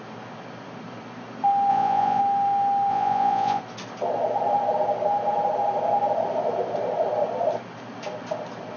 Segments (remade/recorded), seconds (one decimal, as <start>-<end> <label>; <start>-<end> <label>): 0.0-1.7 recorded; 1.7-2.2 remade; 2.2-2.9 recorded; 2.9-3.6 remade; 3.6-8.8 recorded